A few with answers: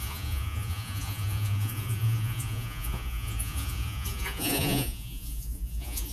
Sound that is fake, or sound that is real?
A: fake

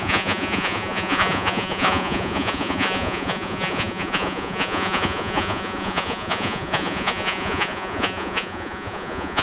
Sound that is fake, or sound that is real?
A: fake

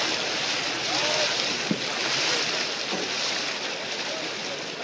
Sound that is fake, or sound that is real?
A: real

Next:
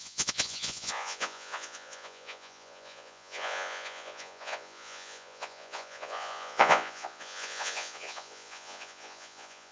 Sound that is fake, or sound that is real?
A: fake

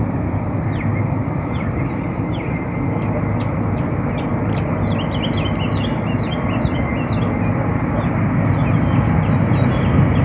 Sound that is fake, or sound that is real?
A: real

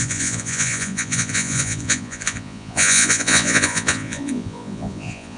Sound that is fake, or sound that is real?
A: fake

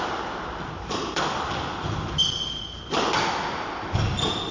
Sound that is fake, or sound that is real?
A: real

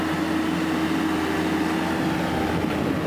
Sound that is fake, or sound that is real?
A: real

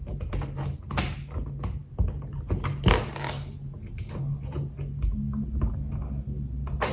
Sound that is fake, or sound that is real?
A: real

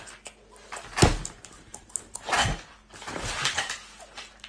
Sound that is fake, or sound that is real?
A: real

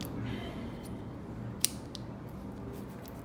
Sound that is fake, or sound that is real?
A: real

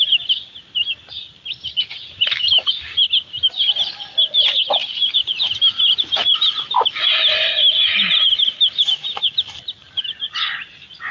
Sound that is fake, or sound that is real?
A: real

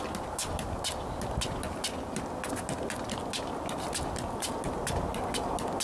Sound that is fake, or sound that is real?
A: real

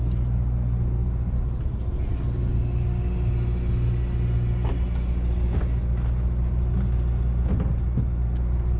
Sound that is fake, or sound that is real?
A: real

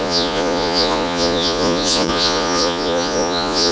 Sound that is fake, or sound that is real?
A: fake